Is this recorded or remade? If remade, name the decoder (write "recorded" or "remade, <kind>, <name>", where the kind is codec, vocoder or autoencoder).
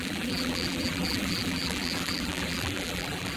remade, vocoder, BigVGAN v2